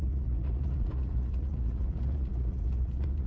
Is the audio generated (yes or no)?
yes